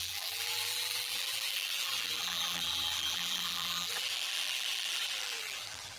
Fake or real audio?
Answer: fake